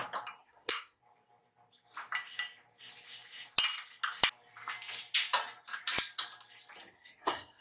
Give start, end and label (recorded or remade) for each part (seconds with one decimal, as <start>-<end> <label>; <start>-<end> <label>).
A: 0.0-0.4 recorded; 0.4-1.0 remade; 1.0-6.8 recorded; 6.8-7.6 remade